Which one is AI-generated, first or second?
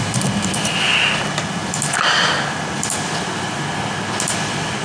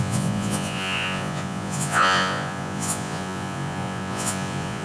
second